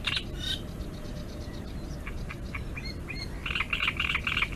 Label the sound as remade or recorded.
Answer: recorded